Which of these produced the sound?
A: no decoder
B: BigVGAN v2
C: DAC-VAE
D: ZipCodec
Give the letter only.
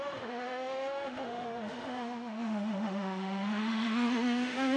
C